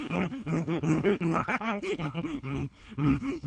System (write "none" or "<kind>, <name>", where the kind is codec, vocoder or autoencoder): codec, HILCodec